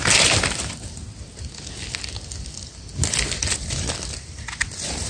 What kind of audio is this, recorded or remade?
recorded